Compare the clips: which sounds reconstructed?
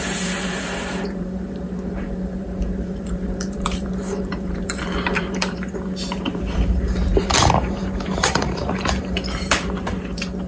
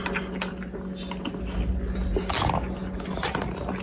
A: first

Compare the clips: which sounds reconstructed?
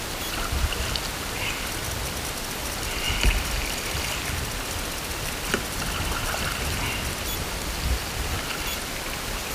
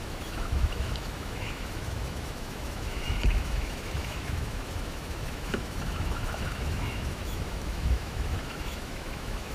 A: second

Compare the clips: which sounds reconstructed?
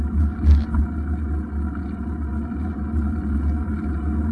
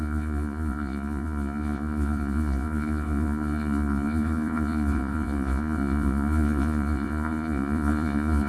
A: second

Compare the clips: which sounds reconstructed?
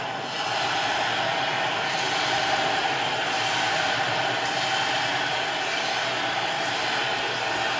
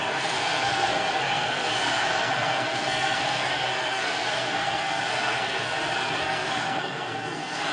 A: second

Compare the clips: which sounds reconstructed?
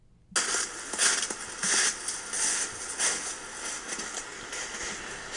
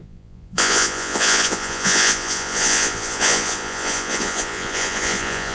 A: second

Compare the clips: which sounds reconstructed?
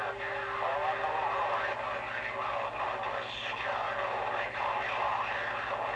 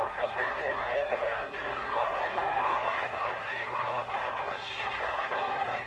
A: second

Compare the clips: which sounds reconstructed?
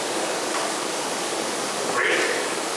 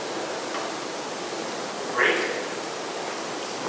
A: first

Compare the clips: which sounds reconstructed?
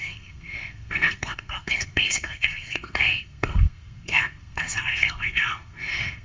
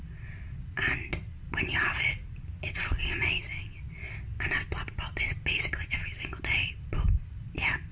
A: first